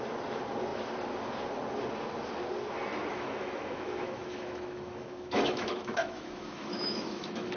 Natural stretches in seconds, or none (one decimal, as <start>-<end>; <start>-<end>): 0.0-3.1